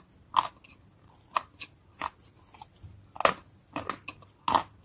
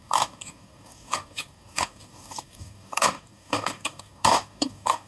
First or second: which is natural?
first